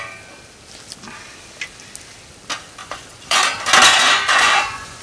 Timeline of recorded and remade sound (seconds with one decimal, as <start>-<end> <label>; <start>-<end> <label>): 0.0-2.8 recorded; 2.8-3.4 remade; 3.4-3.9 recorded; 3.9-5.0 remade